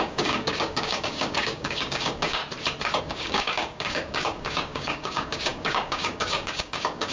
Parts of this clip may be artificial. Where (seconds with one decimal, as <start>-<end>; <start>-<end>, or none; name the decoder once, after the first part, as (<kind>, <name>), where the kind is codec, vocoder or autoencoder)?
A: 0.0-2.4 (codec, DAC); 3.0-7.1